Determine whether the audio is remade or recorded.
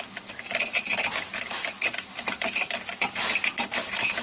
recorded